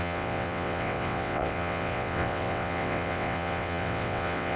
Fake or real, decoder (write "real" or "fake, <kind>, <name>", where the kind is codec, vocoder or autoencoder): fake, vocoder, WaveNeXt